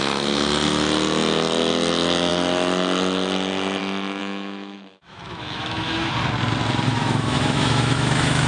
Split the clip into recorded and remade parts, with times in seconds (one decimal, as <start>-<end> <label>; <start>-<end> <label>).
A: 0.0-4.2 recorded; 4.2-6.1 remade; 6.1-6.9 recorded; 6.9-8.5 remade